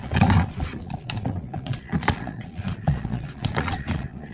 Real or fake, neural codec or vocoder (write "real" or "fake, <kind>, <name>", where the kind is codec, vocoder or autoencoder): fake, vocoder, Vocos